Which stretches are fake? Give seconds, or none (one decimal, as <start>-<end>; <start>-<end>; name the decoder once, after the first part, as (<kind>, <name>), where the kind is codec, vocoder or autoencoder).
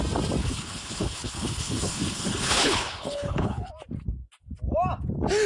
0.4-3.7 (codec, HILCodec)